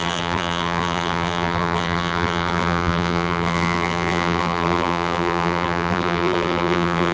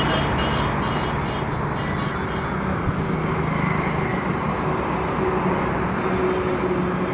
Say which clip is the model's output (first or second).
first